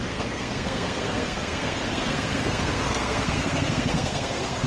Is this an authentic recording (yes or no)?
no